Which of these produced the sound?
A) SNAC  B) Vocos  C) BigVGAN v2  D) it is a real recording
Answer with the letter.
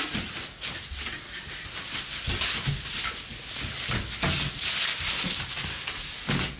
D